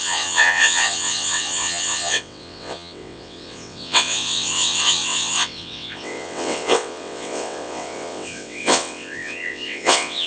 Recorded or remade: remade